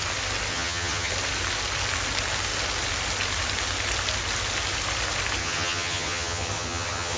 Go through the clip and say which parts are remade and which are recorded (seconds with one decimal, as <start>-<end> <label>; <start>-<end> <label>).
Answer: 0.0-0.5 recorded; 0.5-1.1 remade; 1.1-5.4 recorded; 5.4-7.2 remade